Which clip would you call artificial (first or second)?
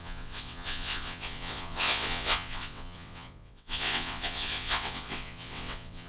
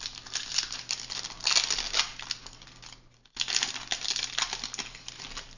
first